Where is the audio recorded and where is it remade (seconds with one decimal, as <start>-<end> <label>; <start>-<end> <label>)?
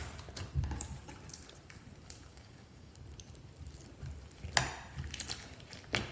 0.0-2.3 recorded; 2.3-2.9 remade; 2.9-6.1 recorded